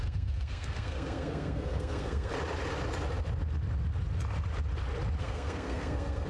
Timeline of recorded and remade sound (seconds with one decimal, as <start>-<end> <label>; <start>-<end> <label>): 0.0-2.3 remade; 2.3-5.2 recorded; 5.2-6.3 remade